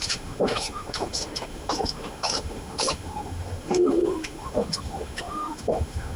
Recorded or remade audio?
remade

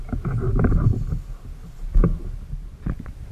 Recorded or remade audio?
recorded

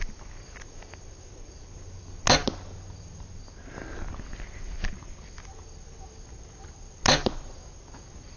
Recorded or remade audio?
recorded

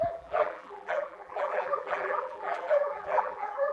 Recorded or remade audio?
remade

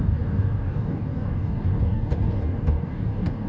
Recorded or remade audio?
remade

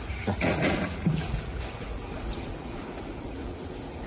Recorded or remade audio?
remade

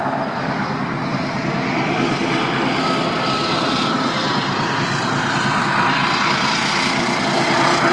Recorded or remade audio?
recorded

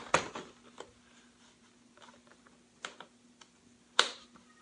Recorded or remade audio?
recorded